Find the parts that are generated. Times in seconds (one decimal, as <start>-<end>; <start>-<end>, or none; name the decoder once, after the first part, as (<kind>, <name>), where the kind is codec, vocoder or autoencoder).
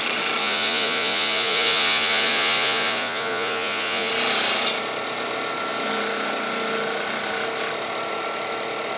0.4-4.1 (vocoder, Vocos)